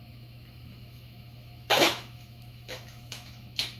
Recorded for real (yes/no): no